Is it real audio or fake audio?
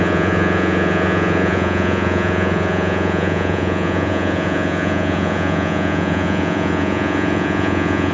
fake